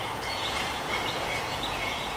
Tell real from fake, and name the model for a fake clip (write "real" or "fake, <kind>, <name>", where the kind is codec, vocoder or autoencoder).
fake, vocoder, Vocos